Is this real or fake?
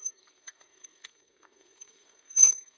fake